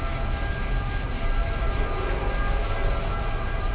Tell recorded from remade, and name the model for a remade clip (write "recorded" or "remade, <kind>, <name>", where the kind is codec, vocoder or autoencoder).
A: recorded